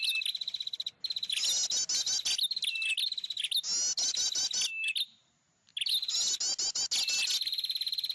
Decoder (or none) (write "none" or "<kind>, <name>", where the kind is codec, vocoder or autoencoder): none